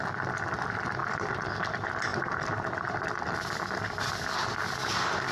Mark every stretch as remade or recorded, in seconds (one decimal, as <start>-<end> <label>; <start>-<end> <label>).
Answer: 0.0-1.0 recorded; 1.0-1.6 remade; 1.6-2.1 recorded; 2.1-4.1 remade; 4.1-5.3 recorded